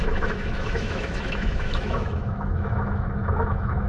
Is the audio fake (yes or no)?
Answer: yes